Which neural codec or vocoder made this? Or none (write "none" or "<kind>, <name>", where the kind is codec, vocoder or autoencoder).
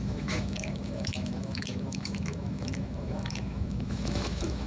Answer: autoencoder, DAC-VAE